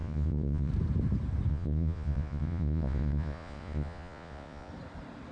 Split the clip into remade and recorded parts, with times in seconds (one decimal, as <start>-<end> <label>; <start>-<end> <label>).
0.0-0.7 remade; 0.7-1.5 recorded; 1.5-4.7 remade; 4.7-5.3 recorded